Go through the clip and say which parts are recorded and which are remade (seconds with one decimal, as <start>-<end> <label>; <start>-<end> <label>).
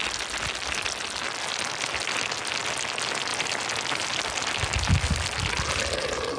0.0-6.4 recorded